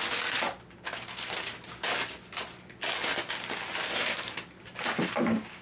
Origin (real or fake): real